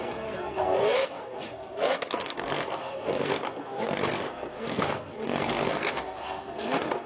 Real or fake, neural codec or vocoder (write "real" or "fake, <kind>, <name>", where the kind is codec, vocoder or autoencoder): fake, codec, SNAC